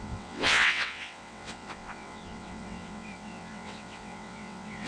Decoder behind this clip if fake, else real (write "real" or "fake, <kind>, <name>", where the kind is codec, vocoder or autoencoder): fake, vocoder, WaveNeXt